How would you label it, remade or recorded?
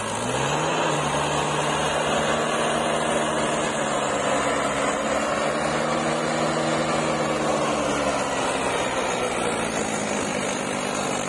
recorded